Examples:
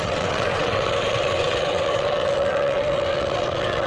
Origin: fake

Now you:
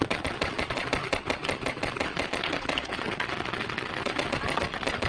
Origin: fake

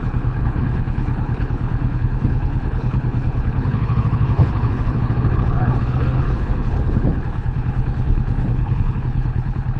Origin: fake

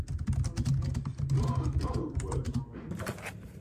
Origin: real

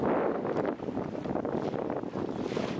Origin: real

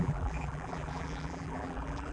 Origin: fake